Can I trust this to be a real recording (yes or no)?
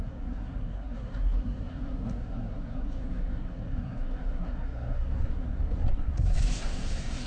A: no